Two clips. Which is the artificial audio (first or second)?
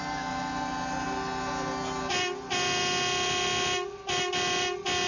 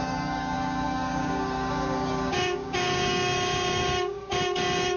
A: second